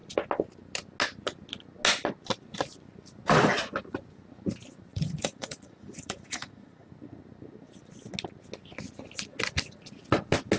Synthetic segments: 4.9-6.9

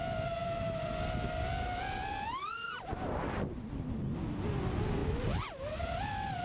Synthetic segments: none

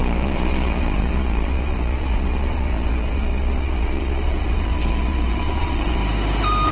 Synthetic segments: 0.0-6.0

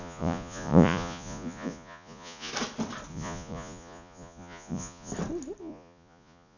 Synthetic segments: 0.0-2.5; 3.1-5.1; 5.6-6.6

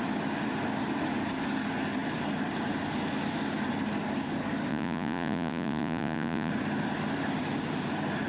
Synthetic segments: 4.7-6.5

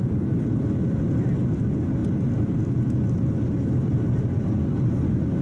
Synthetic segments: none